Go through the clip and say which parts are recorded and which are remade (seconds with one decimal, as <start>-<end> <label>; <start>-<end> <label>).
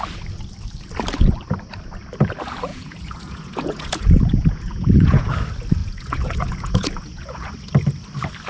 0.0-2.7 recorded; 2.7-5.3 remade; 5.3-5.8 recorded; 5.8-7.5 remade; 7.5-8.5 recorded